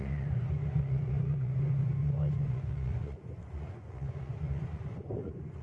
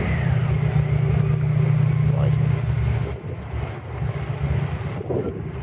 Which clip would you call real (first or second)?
second